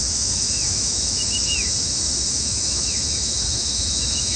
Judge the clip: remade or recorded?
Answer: remade